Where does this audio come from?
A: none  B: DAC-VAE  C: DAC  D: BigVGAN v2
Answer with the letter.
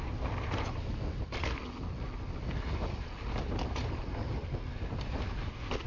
A